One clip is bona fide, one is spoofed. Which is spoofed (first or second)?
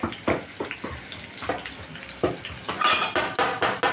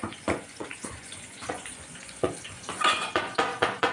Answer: second